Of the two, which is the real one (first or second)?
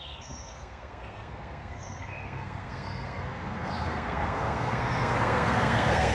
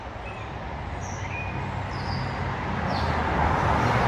second